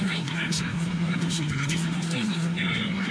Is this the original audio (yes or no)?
no